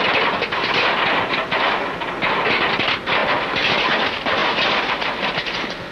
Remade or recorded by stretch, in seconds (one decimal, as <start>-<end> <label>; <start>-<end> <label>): 0.0-4.4 recorded; 4.4-5.9 remade